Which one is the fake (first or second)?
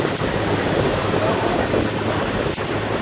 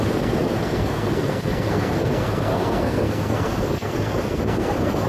second